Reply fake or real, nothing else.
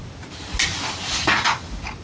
real